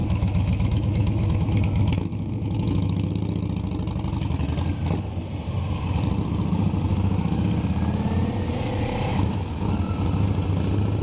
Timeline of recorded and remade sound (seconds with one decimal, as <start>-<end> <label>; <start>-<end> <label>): 0.0-3.1 remade; 3.1-6.9 recorded; 6.9-7.4 remade; 7.4-9.1 recorded; 9.1-9.7 remade; 9.7-11.0 recorded